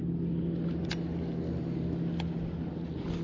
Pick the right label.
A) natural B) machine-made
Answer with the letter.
A